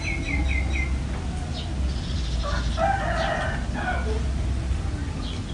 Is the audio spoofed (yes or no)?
no